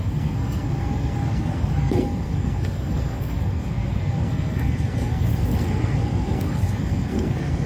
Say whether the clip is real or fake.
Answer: fake